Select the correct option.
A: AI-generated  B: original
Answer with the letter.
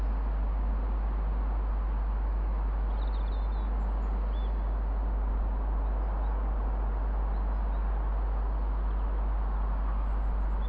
B